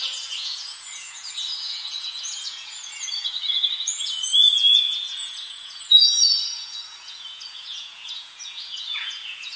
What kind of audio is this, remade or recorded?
remade